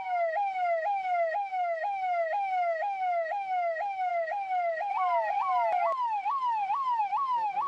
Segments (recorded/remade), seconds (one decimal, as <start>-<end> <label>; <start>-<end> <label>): 0.0-4.1 remade; 4.1-7.0 recorded; 7.0-7.7 remade